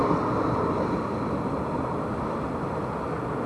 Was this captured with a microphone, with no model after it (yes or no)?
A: yes